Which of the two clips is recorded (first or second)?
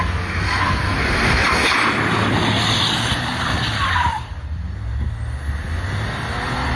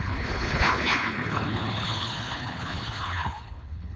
first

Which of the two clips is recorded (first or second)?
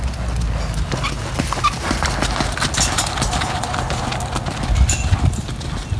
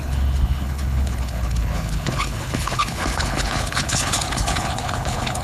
first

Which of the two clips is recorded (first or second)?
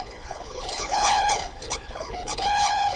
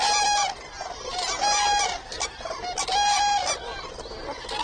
second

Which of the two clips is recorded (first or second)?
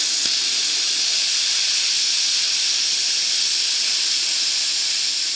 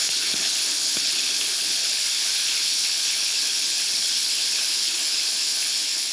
first